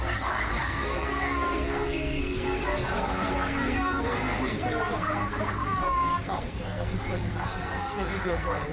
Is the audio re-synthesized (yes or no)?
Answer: yes